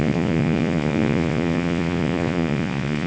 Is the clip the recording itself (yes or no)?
no